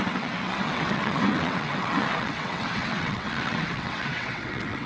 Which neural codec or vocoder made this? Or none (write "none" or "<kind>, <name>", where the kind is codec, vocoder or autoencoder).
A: vocoder, WaveNeXt